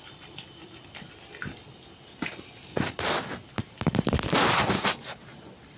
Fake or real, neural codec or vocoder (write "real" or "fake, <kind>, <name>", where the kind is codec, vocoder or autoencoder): real